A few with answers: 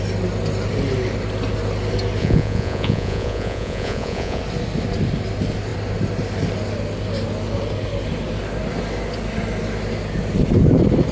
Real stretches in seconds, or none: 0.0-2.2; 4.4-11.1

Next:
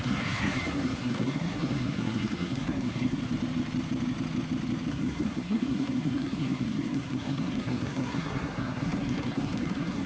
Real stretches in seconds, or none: 3.2-4.9

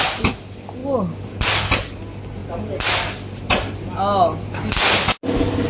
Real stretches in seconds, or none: 0.0-5.7

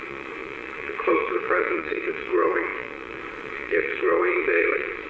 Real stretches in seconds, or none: none

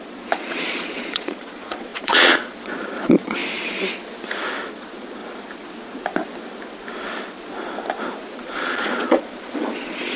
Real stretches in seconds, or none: 3.4-4.7; 5.2-8.3

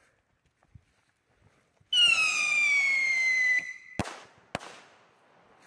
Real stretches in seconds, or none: 0.0-5.7